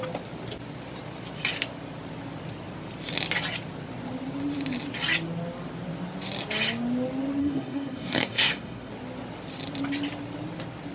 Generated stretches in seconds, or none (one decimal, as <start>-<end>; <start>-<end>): 7.4-8.9

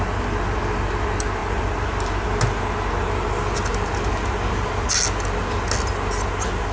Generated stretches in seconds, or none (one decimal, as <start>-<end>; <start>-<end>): none

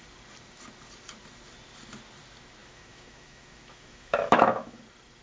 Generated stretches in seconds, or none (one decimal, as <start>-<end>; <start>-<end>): 2.6-4.8

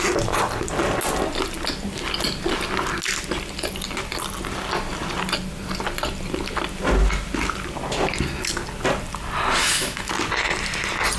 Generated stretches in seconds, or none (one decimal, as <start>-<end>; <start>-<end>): 9.6-10.1

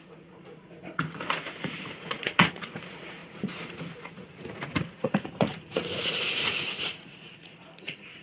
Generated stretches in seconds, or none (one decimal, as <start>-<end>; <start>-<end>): 0.0-8.2